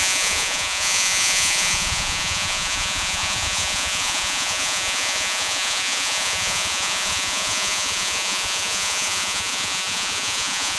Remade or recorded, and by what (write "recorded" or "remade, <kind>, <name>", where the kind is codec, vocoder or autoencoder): remade, vocoder, Vocos